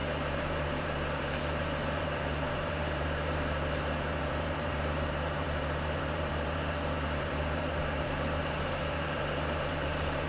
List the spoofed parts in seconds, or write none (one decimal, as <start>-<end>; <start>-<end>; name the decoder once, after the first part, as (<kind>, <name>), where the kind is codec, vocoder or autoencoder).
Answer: 0.0-10.3 (vocoder, BigVGAN v2)